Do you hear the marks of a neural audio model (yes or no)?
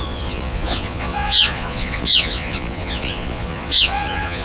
yes